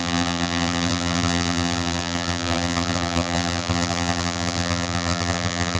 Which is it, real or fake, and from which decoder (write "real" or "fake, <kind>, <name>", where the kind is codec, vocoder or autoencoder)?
fake, vocoder, BigVGAN v2